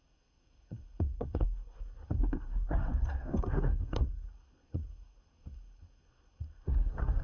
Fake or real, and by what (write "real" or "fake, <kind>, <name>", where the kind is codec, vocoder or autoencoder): fake, codec, SNAC